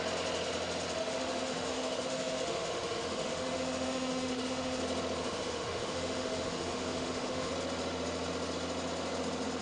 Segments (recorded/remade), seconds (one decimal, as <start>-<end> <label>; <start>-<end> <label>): 0.0-1.0 recorded; 1.0-4.8 remade; 4.8-5.2 recorded; 5.2-7.5 remade; 7.5-9.6 recorded